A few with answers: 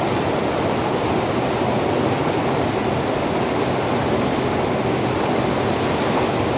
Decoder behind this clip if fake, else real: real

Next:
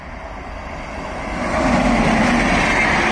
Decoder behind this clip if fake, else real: real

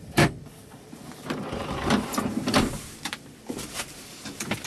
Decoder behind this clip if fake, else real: fake, vocoder, BigVGAN v2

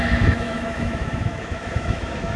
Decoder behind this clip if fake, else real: fake, autoencoder, DAC-VAE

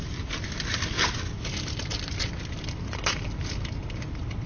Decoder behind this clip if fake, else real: fake, vocoder, BigVGAN v2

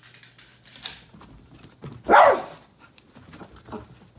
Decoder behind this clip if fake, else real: real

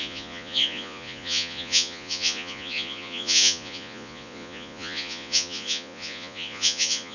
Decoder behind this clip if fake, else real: fake, vocoder, Vocos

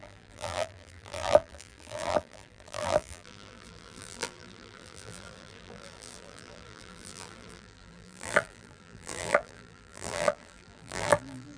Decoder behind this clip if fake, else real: fake, vocoder, BigVGAN v2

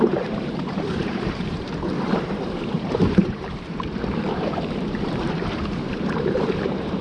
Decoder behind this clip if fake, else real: fake, vocoder, BigVGAN v2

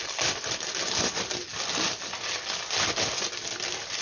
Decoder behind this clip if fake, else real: real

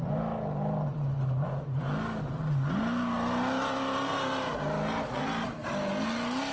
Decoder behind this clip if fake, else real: real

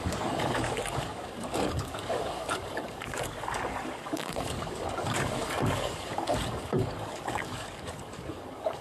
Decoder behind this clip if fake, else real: fake, codec, DAC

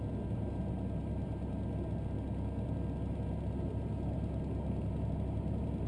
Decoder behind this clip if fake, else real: real